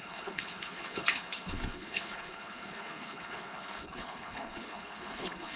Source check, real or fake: fake